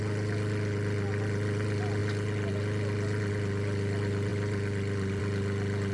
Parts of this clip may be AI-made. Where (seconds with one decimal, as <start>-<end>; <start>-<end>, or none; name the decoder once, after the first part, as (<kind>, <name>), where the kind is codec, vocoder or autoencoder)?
none